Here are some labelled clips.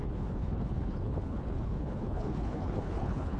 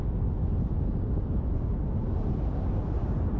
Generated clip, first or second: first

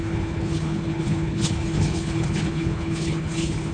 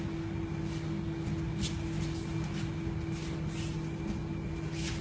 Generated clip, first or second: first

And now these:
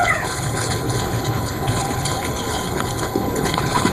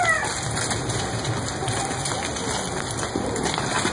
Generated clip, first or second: first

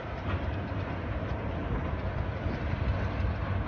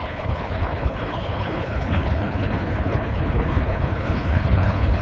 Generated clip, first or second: second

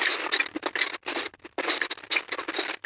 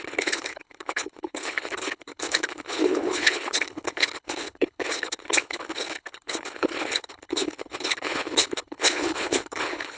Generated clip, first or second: second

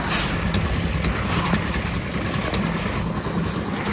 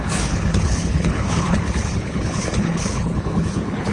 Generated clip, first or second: second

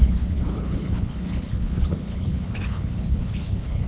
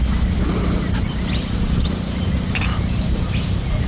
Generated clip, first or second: first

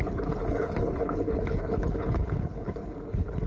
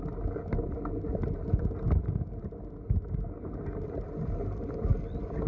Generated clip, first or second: first